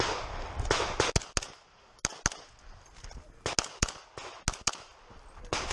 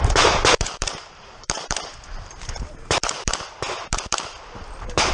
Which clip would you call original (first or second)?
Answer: first